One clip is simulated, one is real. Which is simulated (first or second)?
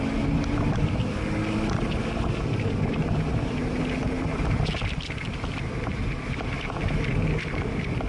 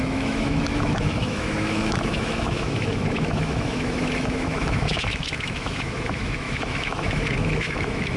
second